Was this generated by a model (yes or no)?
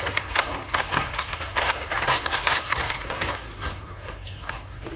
yes